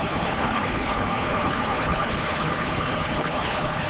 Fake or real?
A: fake